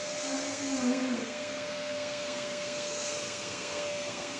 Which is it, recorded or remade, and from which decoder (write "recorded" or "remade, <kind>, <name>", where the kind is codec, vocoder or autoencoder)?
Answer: remade, codec, SNAC